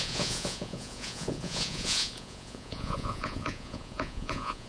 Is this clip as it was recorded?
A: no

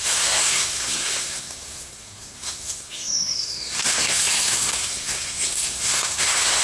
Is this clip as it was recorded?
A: no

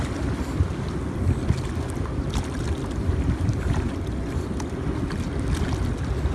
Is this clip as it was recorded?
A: yes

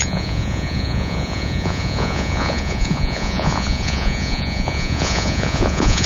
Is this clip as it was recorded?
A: no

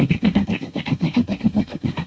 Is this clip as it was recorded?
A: no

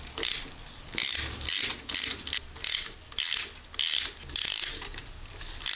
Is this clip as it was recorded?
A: yes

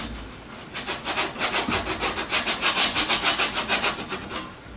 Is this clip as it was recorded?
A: yes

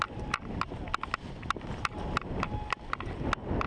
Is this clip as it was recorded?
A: yes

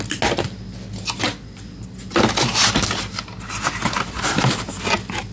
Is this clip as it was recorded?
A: yes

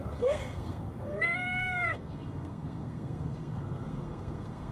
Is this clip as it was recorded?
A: no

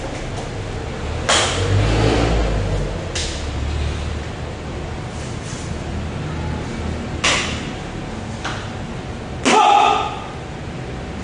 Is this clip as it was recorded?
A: yes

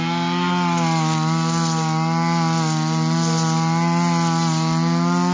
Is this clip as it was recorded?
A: yes